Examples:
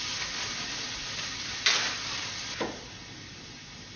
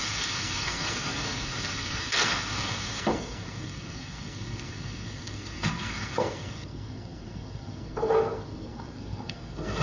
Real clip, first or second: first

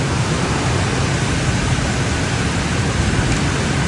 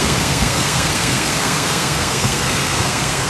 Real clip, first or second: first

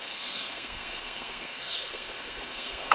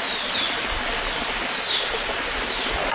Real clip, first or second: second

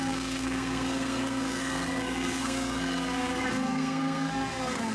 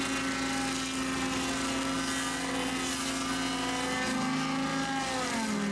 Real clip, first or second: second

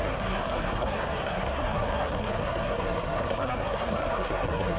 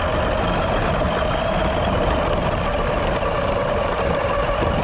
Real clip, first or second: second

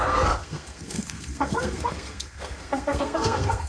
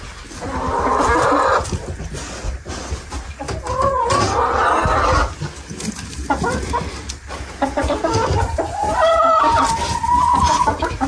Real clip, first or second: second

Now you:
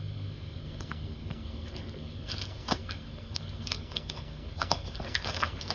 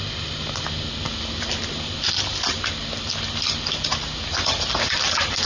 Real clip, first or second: second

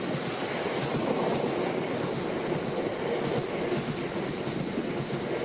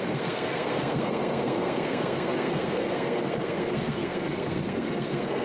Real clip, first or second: first